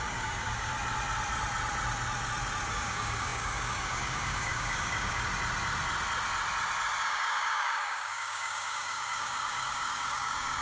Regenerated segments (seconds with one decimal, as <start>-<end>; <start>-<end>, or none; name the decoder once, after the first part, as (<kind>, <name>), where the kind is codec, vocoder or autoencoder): 0.0-0.7 (codec, DAC); 2.7-5.3; 7.0-10.6